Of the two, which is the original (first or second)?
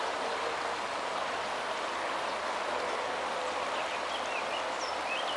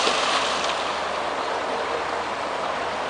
first